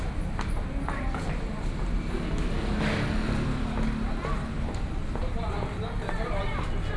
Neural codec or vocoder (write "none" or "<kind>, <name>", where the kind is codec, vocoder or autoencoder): none